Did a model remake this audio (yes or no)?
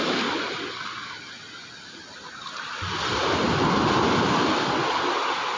no